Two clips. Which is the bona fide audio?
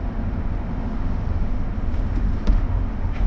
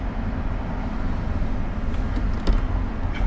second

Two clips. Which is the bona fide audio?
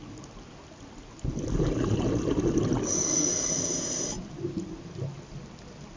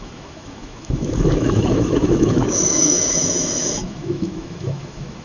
first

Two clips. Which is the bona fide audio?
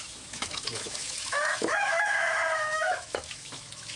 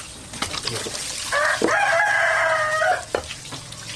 second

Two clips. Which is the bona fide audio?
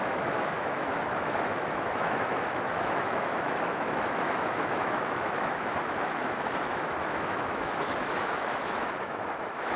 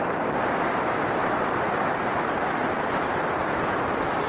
second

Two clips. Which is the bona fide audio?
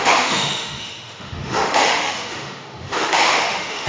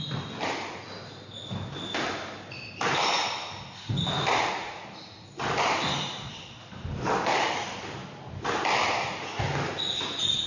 second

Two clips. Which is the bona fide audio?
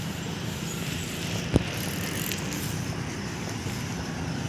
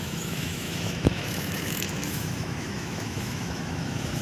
first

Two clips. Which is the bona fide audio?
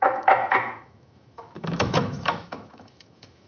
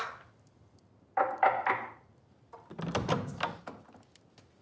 second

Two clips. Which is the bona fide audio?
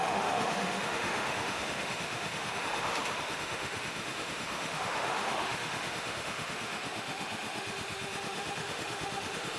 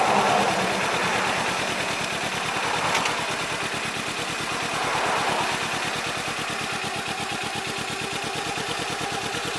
second